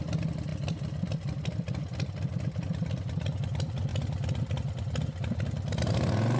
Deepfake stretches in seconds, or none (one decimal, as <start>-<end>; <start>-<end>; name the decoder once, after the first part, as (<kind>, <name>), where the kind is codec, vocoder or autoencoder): none